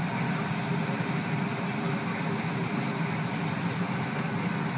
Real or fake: real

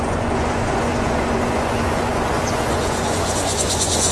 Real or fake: fake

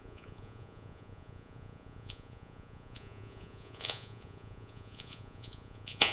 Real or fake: fake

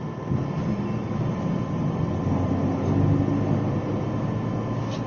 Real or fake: real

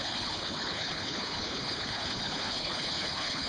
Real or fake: fake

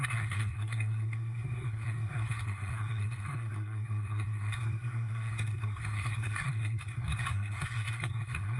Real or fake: fake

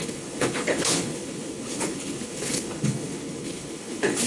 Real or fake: fake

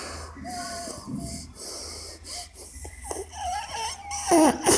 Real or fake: real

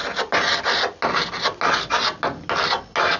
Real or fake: real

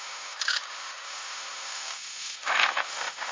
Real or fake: fake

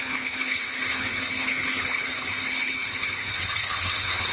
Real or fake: fake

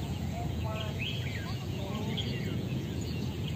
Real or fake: fake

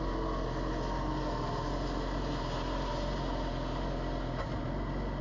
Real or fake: real